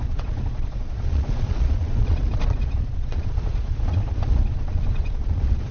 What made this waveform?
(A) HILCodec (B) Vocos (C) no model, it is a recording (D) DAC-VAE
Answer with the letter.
B